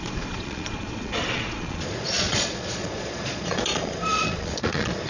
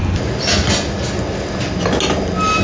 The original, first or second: second